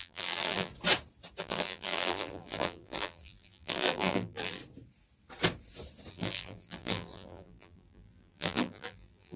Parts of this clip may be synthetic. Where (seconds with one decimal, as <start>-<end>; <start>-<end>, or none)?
0.0-0.7; 1.4-4.6; 6.1-9.4